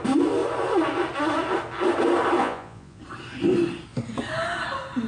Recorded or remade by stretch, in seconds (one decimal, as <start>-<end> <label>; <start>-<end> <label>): 0.0-2.4 recorded; 2.4-3.0 remade; 3.0-5.1 recorded